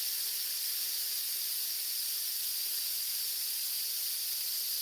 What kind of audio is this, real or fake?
real